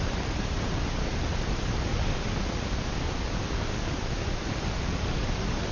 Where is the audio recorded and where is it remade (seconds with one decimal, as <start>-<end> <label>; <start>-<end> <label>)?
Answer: 0.0-1.9 remade; 1.9-4.5 recorded; 4.5-5.7 remade